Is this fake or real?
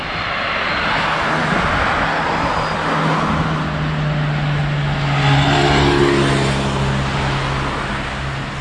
real